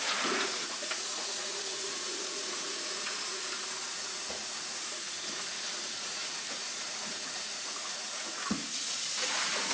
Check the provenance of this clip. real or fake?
fake